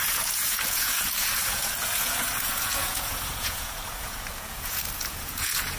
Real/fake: fake